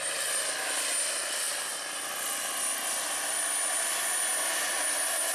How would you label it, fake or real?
real